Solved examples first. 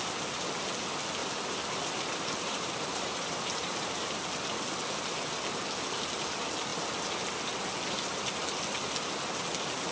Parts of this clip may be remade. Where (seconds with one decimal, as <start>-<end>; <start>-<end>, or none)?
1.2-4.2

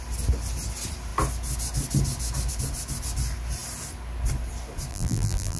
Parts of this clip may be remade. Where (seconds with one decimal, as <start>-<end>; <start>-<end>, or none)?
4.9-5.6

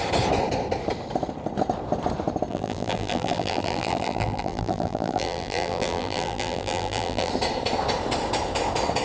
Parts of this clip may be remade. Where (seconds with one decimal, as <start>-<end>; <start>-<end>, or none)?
2.5-7.3